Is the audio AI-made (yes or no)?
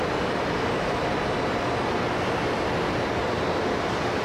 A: no